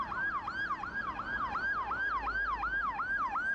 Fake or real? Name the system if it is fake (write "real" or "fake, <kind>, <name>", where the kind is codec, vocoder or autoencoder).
real